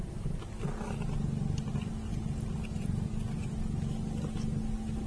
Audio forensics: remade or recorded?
recorded